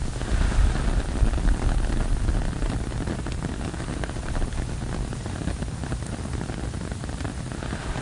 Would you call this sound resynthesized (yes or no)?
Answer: no